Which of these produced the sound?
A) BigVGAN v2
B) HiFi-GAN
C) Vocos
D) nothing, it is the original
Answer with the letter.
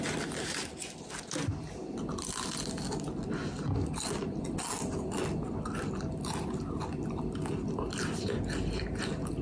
D